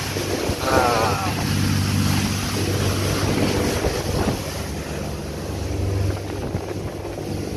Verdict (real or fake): real